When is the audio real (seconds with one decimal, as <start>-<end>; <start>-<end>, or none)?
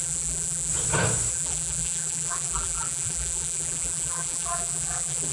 0.7-1.3